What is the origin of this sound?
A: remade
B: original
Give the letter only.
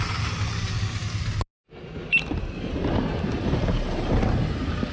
B